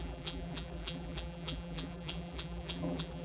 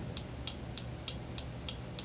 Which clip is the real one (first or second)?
second